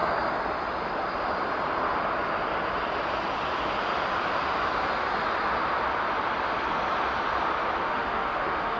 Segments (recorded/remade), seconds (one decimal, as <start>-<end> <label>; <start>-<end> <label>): 0.0-7.9 recorded; 7.9-8.8 remade